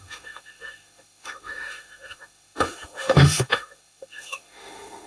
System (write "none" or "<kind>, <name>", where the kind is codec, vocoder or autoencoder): autoencoder, DAC-VAE